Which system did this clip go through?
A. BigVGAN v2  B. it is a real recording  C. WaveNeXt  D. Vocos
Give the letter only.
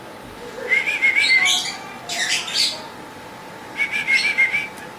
B